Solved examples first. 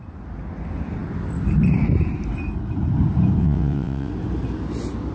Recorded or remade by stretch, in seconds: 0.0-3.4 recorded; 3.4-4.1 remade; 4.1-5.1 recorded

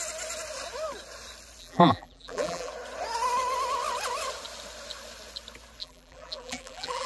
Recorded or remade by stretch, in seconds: 0.0-1.6 recorded; 1.6-2.7 remade; 2.7-5.8 recorded; 5.8-7.1 remade

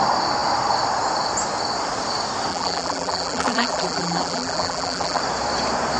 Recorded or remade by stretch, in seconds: 0.0-2.5 recorded; 2.5-5.2 remade; 5.2-6.0 recorded

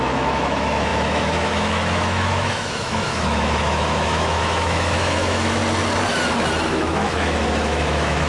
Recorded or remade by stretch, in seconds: 0.0-5.6 remade; 5.6-6.7 recorded; 6.7-8.3 remade

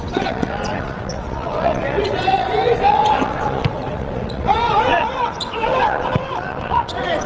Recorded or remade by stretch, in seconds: 0.0-7.3 remade

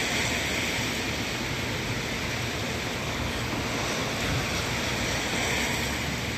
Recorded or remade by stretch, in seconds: 0.0-3.0 recorded; 3.0-3.5 remade; 3.5-6.4 recorded

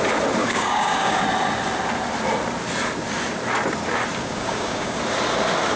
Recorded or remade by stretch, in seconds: 0.0-0.4 recorded; 0.4-1.2 remade; 1.2-4.2 recorded; 4.2-5.0 remade; 5.0-5.8 recorded

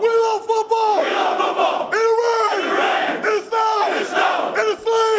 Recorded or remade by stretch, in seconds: 0.0-0.9 recorded; 0.9-1.4 remade; 1.4-2.8 recorded; 2.8-3.5 remade; 3.5-5.2 recorded